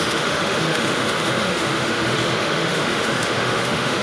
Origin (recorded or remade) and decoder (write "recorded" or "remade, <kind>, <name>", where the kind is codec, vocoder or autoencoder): remade, autoencoder, DAC-VAE